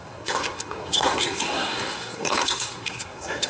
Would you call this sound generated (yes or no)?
yes